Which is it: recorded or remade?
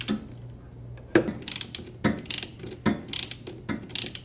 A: recorded